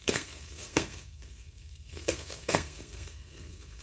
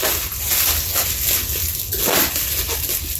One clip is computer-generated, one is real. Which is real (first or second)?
second